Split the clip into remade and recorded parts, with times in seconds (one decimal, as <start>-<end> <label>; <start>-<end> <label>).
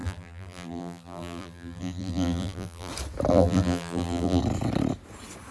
0.0-2.9 remade; 2.9-3.3 recorded; 3.3-4.4 remade; 4.4-5.5 recorded